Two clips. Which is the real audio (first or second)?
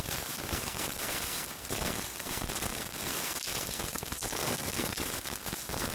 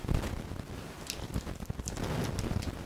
second